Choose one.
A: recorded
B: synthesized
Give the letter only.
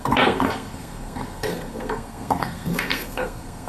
B